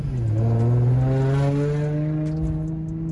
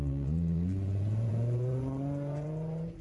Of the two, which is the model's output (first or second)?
second